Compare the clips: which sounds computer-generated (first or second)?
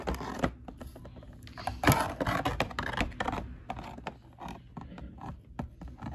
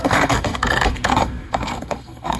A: second